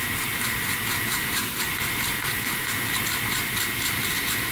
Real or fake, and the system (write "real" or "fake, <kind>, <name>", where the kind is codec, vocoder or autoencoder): real